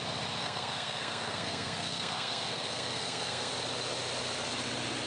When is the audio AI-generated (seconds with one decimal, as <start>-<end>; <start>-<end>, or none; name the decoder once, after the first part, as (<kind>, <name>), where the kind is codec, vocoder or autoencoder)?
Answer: 0.4-3.5 (codec, SNAC)